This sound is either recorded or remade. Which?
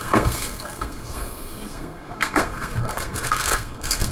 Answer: remade